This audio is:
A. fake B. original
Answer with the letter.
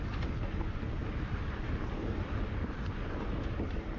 B